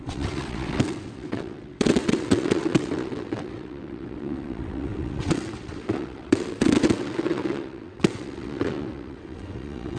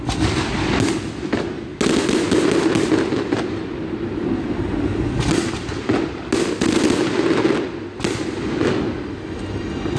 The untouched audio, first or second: second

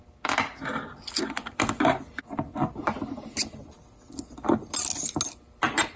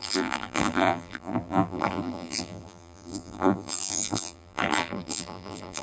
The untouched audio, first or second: first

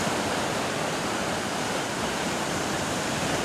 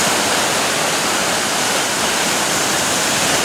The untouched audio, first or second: second